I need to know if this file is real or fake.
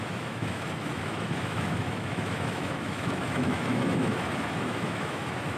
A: fake